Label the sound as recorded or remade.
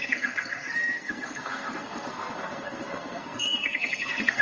remade